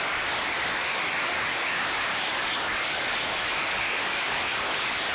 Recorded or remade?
remade